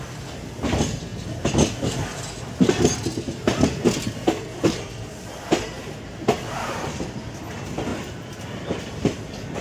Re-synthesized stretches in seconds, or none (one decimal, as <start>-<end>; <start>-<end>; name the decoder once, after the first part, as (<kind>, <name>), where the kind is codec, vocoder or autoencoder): none